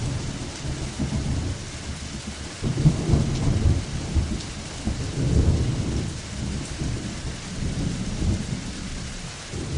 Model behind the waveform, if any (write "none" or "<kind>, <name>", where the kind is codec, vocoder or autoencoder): none